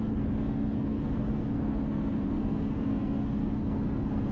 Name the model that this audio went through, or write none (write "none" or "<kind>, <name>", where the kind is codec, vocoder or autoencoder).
codec, SNAC